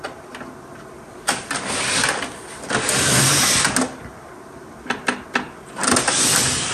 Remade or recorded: recorded